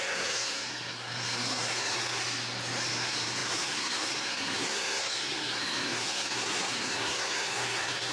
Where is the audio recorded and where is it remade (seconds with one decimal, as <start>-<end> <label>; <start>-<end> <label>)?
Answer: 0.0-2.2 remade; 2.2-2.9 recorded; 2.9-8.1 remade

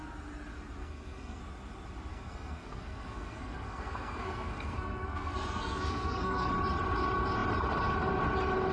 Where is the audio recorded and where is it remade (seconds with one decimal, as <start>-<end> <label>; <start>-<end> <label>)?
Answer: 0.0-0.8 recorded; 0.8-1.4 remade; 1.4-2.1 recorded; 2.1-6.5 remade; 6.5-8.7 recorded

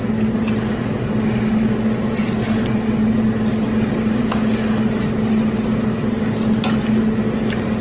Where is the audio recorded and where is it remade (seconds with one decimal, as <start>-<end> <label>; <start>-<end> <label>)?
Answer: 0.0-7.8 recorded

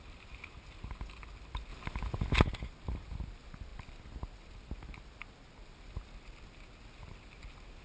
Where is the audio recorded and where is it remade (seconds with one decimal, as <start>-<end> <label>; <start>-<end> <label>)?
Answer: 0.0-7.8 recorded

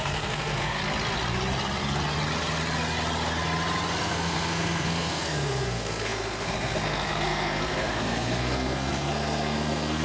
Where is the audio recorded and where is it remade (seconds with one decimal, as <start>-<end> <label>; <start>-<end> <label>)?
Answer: 0.0-0.8 remade; 0.8-4.0 recorded; 4.0-10.0 remade

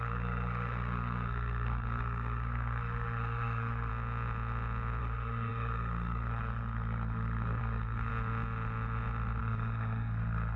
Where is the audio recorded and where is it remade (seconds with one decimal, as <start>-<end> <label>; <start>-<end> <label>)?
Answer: 0.0-3.9 remade; 3.9-5.0 recorded; 5.0-8.1 remade; 8.1-9.4 recorded; 9.4-10.6 remade

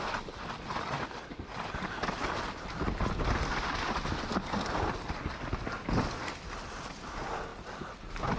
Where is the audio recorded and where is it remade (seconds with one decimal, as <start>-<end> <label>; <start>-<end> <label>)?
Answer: 0.0-8.4 recorded